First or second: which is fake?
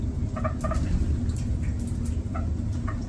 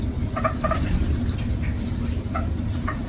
second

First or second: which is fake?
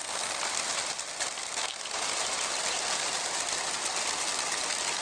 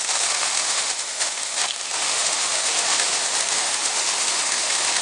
second